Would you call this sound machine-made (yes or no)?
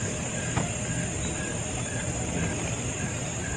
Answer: yes